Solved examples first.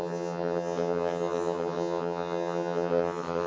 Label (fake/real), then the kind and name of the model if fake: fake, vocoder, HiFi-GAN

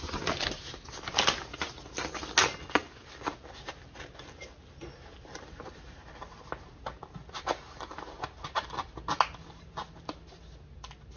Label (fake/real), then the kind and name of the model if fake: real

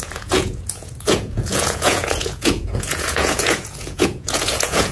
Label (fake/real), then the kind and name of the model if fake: fake, vocoder, Vocos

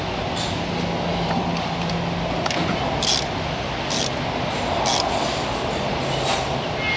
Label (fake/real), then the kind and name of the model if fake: real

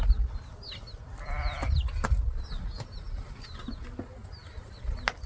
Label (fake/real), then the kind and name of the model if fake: real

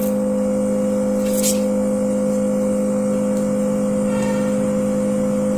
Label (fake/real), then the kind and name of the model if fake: real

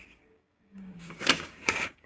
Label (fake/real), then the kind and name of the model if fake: fake, codec, DAC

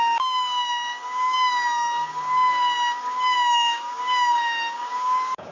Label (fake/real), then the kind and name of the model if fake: fake, codec, DAC